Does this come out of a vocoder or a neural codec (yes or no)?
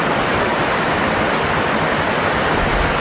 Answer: no